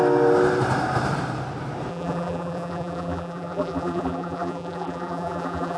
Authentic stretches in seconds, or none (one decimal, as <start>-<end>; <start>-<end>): 0.0-1.9